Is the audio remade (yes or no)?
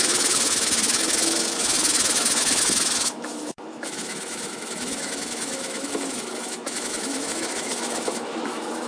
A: yes